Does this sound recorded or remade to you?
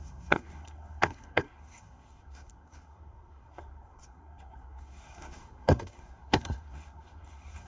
remade